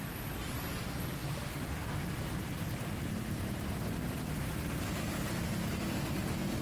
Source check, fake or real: real